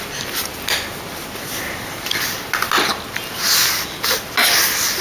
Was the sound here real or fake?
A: real